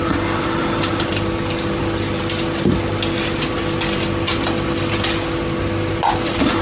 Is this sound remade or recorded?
recorded